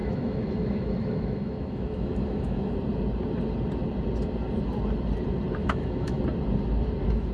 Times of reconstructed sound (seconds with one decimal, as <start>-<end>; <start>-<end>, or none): 0.0-2.7; 5.6-6.2